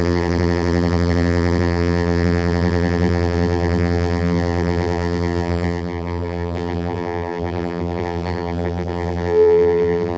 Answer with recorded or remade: remade